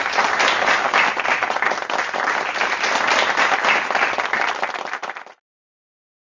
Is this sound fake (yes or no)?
no